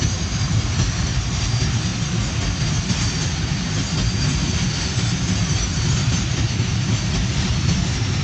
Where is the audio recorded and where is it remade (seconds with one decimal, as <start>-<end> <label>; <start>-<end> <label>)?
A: 0.0-8.2 recorded

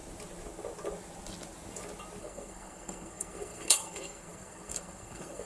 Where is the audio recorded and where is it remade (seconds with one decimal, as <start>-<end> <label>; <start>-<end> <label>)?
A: 0.0-2.2 recorded; 2.2-5.5 remade

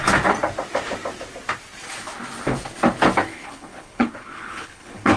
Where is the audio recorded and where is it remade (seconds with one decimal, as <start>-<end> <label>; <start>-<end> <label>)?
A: 0.0-3.3 recorded; 3.3-5.2 remade

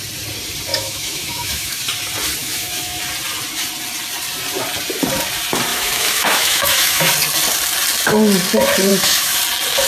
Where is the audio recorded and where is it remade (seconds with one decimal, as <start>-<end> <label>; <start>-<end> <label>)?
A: 0.0-0.7 recorded; 0.7-1.8 remade; 1.8-2.4 recorded; 2.4-3.0 remade; 3.0-5.7 recorded; 5.7-7.1 remade; 7.1-8.9 recorded; 8.9-9.4 remade; 9.4-9.9 recorded

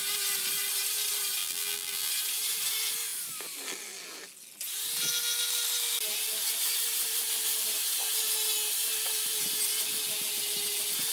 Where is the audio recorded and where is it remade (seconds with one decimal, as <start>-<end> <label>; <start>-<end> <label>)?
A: 0.0-1.4 recorded; 1.4-2.1 remade; 2.1-11.1 recorded